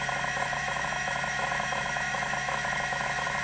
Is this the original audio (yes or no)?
no